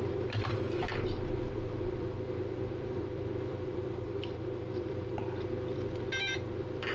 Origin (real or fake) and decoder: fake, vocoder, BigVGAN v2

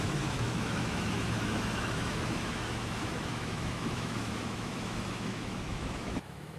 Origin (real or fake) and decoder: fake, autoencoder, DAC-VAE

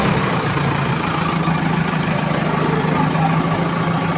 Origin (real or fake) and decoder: real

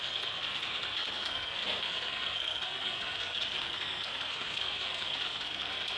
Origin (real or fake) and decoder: fake, codec, SNAC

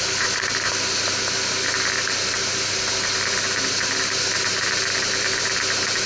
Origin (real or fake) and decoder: real